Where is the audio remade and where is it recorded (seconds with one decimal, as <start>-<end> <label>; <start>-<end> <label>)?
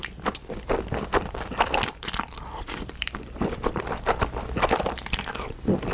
0.0-0.4 recorded; 0.4-3.9 remade; 3.9-5.9 recorded